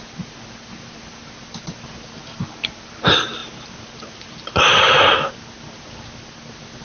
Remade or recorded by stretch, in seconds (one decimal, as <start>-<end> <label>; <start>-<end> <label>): 0.0-3.4 recorded; 3.4-5.3 remade; 5.3-6.8 recorded